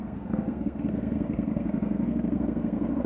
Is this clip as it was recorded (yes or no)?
no